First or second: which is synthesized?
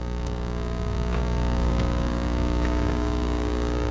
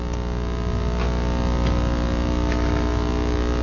first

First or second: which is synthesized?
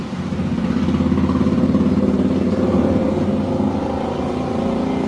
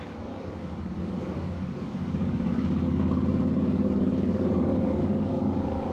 second